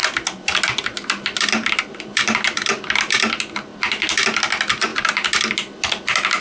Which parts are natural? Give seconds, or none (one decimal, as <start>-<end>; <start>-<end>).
0.0-6.4